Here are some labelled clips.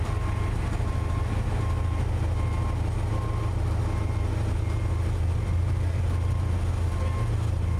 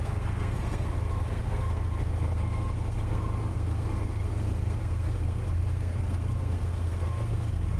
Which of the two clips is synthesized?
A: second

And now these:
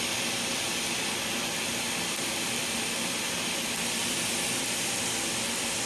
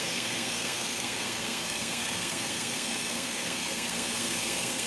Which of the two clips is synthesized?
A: second